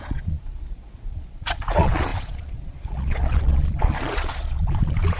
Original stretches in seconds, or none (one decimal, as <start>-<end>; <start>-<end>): none